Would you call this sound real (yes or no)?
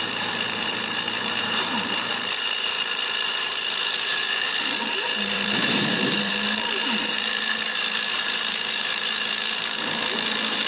no